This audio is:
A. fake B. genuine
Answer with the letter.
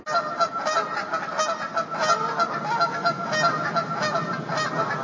B